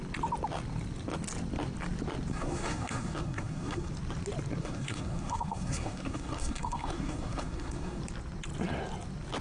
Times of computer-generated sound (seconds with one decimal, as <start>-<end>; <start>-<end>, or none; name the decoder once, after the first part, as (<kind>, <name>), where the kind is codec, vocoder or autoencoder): 2.3-3.9 (codec, SNAC); 4.6-8.0